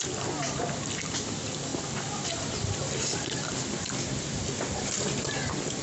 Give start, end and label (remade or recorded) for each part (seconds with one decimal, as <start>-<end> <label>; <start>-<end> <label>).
0.0-5.8 recorded